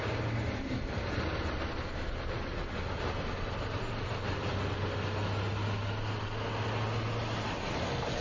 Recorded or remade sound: recorded